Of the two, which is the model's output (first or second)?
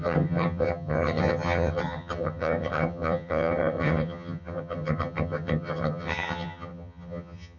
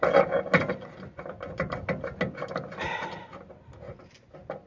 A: first